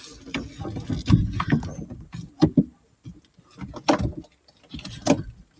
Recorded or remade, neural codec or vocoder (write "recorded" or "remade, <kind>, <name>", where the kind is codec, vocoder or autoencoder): recorded